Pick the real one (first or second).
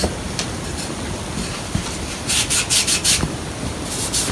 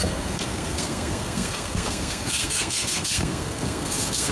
first